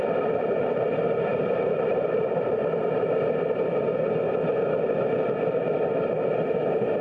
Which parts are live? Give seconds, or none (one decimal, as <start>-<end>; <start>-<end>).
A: 0.0-1.3; 2.2-7.0